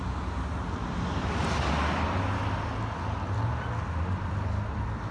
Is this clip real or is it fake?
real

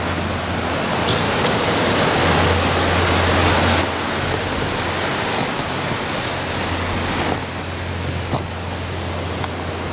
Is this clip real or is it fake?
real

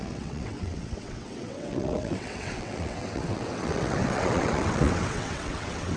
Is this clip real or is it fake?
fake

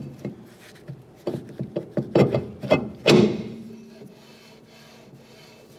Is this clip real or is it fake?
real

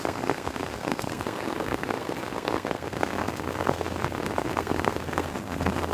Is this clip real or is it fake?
fake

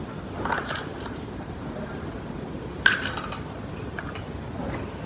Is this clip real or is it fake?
real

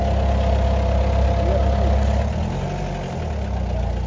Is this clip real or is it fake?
real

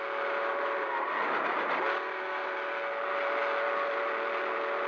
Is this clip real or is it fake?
real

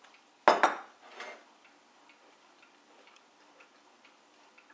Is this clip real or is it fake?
real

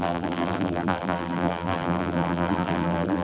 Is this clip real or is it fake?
fake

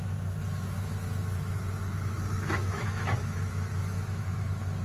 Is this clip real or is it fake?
fake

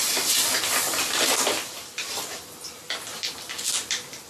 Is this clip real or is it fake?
real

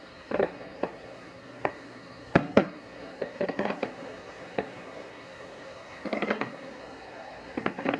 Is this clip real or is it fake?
fake